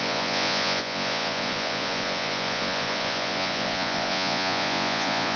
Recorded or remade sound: remade